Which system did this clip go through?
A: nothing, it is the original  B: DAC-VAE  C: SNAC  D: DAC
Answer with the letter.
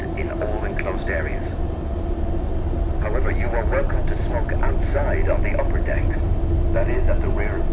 A